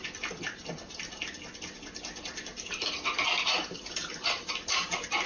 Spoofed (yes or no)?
yes